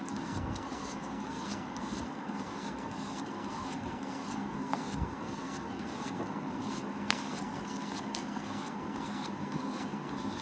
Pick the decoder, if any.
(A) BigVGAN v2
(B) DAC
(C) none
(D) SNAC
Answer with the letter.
D